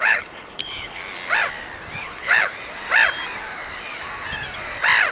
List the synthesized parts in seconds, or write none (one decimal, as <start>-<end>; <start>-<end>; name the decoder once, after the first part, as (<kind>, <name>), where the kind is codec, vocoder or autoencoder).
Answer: 0.0-1.0 (codec, HILCodec); 2.0-2.5